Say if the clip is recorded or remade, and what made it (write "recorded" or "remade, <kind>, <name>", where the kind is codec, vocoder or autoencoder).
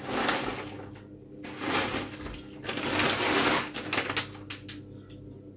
recorded